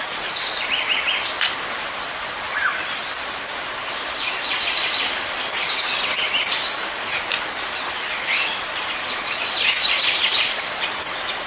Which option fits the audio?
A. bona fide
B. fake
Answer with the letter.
B